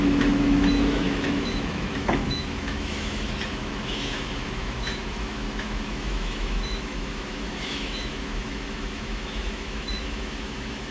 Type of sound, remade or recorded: remade